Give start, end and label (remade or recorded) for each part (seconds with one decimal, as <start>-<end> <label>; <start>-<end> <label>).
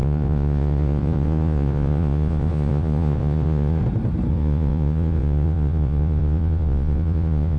0.0-3.8 remade; 3.8-4.3 recorded; 4.3-7.6 remade